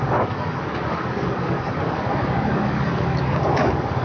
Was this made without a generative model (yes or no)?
no